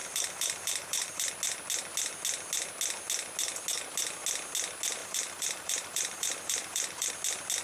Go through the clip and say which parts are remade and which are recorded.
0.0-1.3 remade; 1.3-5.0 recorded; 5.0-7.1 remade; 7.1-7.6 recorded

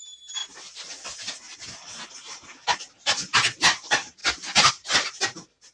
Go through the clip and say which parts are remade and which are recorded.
0.0-0.4 remade; 0.4-2.1 recorded; 2.1-5.7 remade

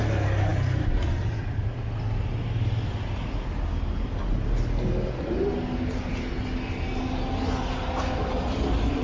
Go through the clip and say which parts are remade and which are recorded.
0.0-9.0 recorded

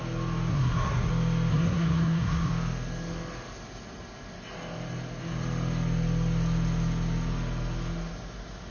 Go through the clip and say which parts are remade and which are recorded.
0.0-0.5 recorded; 0.5-1.1 remade; 1.1-1.5 recorded; 1.5-2.5 remade; 2.5-8.7 recorded

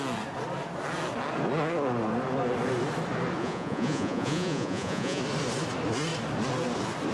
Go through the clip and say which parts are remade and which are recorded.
0.0-3.4 recorded; 3.4-5.2 remade; 5.2-7.1 recorded